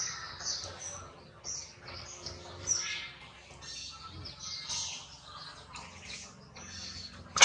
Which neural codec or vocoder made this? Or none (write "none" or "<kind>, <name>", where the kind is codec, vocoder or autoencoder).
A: none